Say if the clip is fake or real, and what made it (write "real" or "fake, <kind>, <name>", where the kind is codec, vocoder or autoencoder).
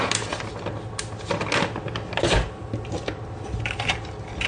fake, vocoder, BigVGAN v2